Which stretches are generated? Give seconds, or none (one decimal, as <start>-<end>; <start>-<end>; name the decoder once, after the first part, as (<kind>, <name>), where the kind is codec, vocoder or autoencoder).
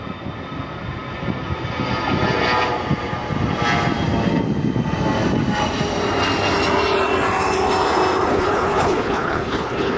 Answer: 8.3-10.0 (codec, HILCodec)